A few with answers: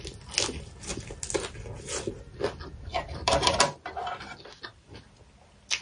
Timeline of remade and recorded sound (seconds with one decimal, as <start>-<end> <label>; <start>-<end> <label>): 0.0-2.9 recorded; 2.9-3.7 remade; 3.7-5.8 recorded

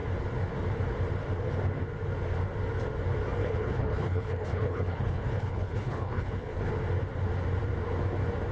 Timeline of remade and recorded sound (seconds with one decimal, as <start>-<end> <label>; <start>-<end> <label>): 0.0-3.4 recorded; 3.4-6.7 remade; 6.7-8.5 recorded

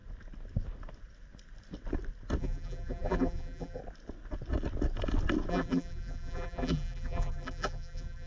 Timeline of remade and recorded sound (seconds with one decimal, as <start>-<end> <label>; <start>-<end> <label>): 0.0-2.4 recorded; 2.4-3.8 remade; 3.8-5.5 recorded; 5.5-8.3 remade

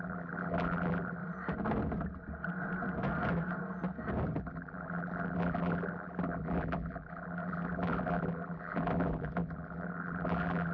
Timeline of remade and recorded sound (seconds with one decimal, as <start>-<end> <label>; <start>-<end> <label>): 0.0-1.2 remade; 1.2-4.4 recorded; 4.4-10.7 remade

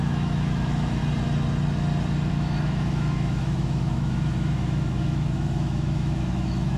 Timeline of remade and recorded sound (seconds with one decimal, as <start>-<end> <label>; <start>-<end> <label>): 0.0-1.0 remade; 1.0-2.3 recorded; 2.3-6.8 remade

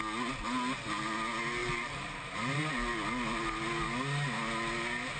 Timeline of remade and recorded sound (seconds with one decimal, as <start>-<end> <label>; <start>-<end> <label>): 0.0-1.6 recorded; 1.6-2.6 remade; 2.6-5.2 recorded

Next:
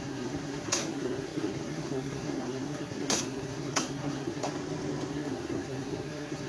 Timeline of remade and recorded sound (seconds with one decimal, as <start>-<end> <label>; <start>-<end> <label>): 0.0-4.5 remade; 4.5-5.1 recorded; 5.1-6.5 remade

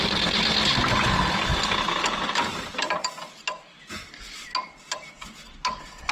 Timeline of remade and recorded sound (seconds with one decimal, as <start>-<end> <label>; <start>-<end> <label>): 0.0-6.1 recorded